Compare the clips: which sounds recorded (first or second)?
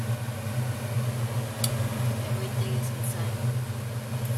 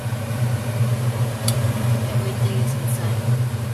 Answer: first